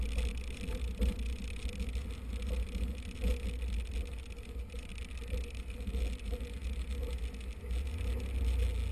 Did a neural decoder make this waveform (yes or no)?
no